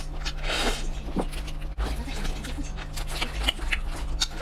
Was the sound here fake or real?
real